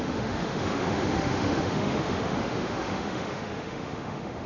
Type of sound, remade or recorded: remade